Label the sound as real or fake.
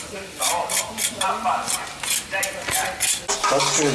real